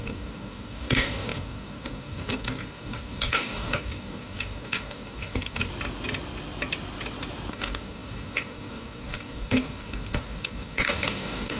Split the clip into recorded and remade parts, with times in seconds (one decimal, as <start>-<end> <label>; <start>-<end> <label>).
0.0-5.7 remade; 5.7-7.5 recorded; 7.5-11.6 remade